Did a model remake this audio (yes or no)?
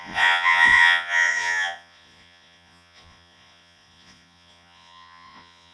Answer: yes